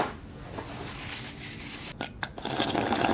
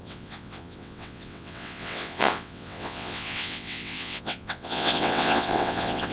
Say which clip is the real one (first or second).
first